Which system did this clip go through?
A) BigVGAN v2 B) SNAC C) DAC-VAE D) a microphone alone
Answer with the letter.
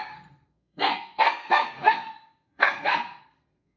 B